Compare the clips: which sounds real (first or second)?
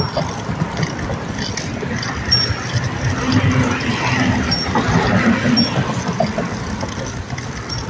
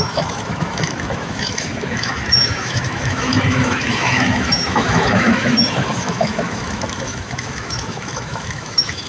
first